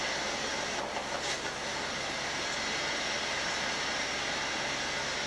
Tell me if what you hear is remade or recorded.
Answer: recorded